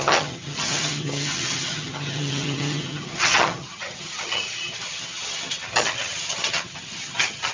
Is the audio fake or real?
fake